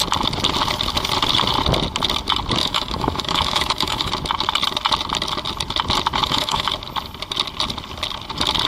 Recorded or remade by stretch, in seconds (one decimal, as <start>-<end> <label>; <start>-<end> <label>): 0.0-2.6 recorded; 2.6-4.1 remade; 4.1-6.2 recorded; 6.2-6.7 remade; 6.7-8.7 recorded